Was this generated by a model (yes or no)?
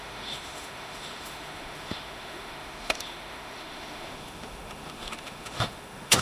yes